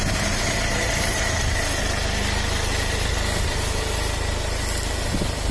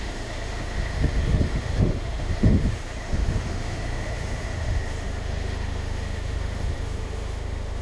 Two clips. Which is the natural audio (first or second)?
first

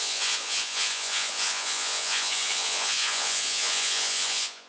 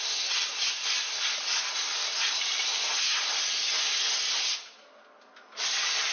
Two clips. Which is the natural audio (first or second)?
second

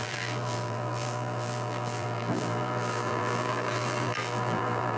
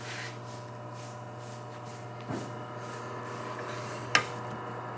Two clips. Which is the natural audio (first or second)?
second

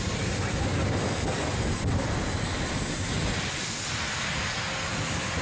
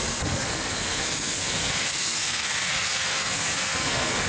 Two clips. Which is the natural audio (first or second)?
first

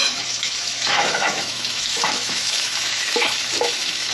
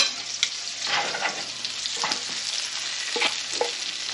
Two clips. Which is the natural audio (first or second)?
second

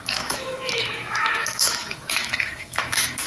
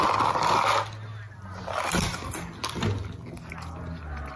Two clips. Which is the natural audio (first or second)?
second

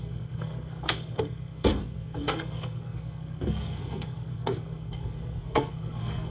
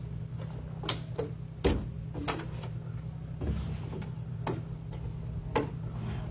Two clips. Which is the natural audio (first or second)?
second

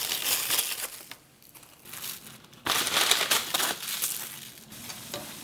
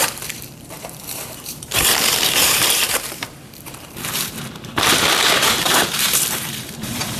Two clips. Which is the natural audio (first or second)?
first